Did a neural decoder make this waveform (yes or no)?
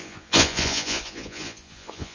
yes